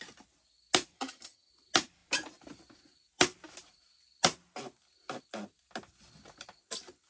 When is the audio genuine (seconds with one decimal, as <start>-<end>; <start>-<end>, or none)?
0.0-0.9; 1.5-7.1